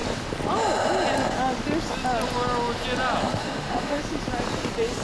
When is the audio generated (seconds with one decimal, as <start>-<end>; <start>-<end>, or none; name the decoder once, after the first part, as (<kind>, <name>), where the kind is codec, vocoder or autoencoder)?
3.4-4.0 (autoencoder, DAC-VAE)